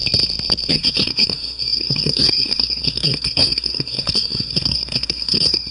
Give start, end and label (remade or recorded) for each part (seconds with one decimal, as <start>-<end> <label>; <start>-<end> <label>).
0.0-0.7 recorded; 0.7-5.7 remade